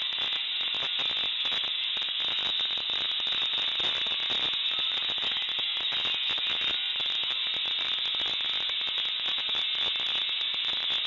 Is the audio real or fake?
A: real